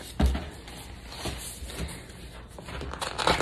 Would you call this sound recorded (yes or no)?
yes